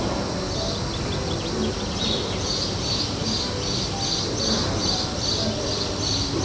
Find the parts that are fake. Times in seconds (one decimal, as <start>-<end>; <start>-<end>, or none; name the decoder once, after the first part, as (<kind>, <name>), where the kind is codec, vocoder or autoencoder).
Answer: none

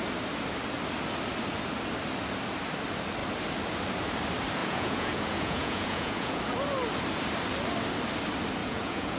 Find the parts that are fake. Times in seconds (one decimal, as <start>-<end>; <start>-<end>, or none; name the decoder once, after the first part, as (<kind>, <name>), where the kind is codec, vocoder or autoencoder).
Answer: 4.6-6.4 (vocoder, Vocos); 8.6-9.2

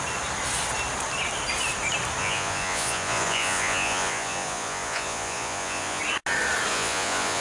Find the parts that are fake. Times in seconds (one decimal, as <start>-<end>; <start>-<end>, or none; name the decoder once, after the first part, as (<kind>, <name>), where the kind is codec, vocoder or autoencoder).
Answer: 2.2-6.0 (vocoder, Vocos); 6.7-7.4

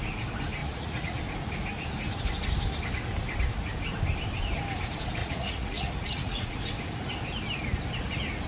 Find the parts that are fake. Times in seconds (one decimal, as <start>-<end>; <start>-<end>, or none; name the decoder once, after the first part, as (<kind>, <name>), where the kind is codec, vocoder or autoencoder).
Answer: 0.6-1.2 (vocoder, Vocos); 5.2-6.6